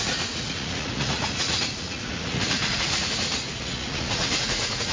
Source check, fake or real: fake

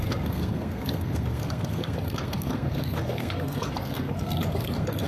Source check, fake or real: fake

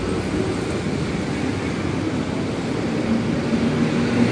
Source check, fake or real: real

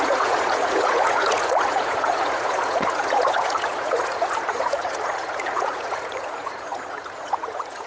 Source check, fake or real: fake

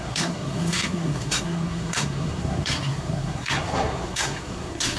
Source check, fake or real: fake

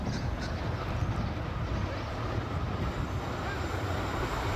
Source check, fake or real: real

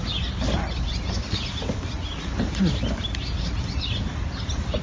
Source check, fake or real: real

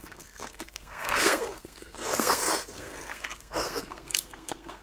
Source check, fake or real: fake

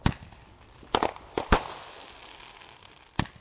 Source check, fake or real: real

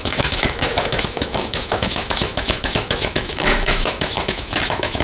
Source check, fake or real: fake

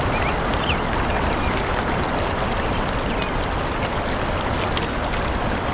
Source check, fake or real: real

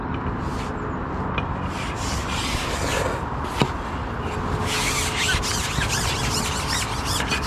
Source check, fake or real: real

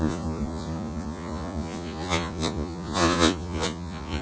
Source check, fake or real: fake